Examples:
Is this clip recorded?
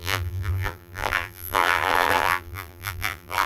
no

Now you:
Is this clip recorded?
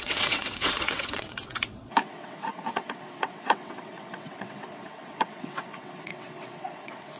no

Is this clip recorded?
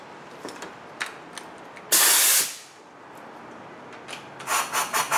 yes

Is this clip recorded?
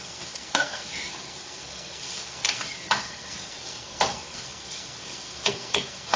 no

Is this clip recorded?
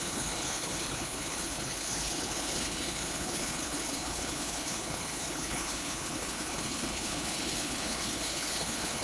no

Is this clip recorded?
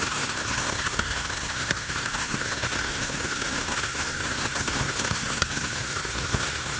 no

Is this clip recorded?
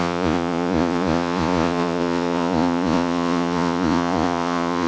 no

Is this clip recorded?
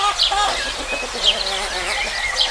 yes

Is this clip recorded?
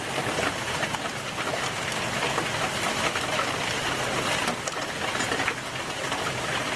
yes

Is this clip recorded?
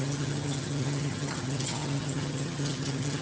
no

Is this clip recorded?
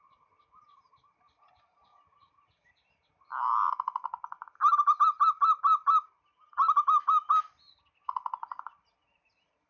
yes